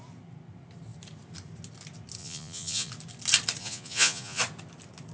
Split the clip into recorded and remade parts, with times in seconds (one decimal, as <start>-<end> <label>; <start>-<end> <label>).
0.0-2.2 recorded; 2.2-2.9 remade; 2.9-3.6 recorded; 3.6-4.4 remade; 4.4-5.1 recorded